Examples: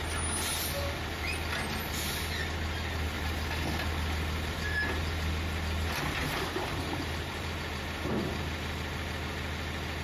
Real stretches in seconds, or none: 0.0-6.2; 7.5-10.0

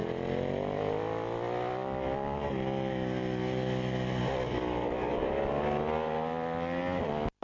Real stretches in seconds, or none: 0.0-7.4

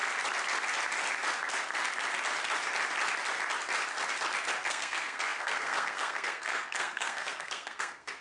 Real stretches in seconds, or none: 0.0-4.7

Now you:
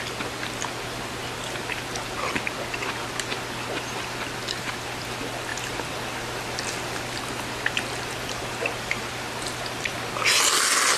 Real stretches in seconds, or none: 0.0-11.0

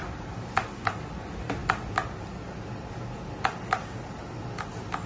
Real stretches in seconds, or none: 0.0-5.1

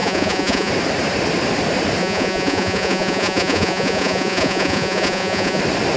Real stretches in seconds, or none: 0.7-2.0; 5.6-6.0